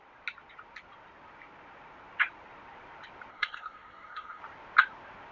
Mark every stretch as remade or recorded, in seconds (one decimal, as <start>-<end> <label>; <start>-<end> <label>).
0.0-3.3 recorded; 3.3-4.4 remade; 4.4-5.3 recorded